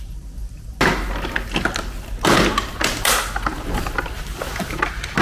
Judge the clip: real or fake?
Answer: real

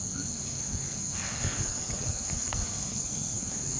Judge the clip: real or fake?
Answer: fake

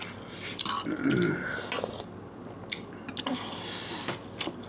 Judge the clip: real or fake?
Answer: real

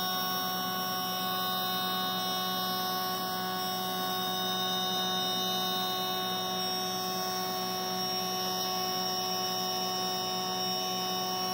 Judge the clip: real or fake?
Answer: real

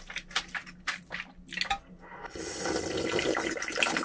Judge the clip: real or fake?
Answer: real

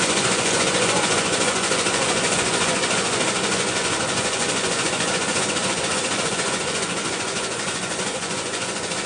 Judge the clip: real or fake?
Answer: fake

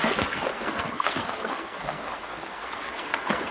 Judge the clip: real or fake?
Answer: fake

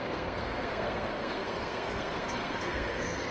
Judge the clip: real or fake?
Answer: fake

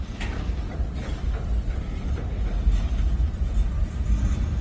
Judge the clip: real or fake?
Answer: real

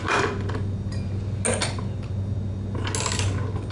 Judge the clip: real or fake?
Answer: real